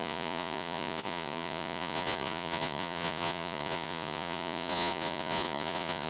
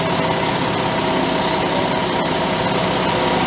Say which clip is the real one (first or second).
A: second